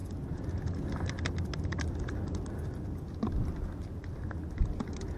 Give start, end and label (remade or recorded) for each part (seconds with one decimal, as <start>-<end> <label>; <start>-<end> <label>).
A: 0.0-5.2 recorded